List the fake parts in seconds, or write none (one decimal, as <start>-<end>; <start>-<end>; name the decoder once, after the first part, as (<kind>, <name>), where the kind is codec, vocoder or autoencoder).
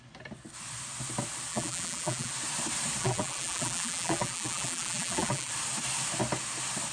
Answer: 1.5-2.3 (vocoder, BigVGAN v2); 3.0-5.5